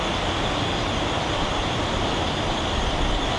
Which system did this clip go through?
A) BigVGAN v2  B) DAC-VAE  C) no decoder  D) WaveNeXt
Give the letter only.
C